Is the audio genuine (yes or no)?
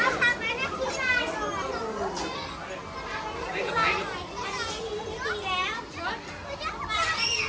yes